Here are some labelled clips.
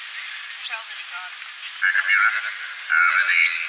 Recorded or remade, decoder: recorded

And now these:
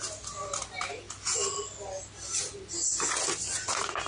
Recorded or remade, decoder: recorded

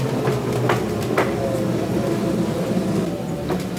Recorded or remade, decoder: remade, vocoder, BigVGAN v2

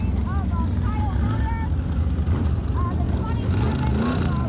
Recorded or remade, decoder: recorded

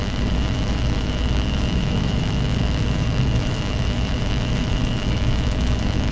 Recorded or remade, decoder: remade, autoencoder, DAC-VAE